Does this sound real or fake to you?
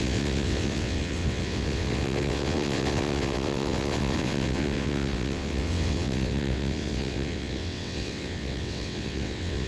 fake